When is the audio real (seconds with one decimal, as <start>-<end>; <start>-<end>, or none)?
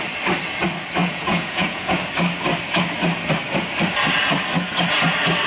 0.0-1.0; 2.1-5.5